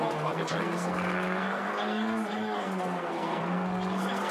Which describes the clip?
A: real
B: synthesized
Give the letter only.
B